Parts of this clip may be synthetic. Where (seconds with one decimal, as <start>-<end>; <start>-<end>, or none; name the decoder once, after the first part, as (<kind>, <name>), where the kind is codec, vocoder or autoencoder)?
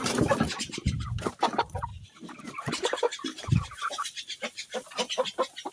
0.0-1.9 (vocoder, BigVGAN v2); 2.4-5.7